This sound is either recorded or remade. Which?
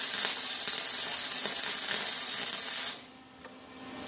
recorded